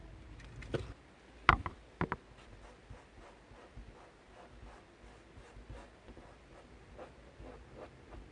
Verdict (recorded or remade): recorded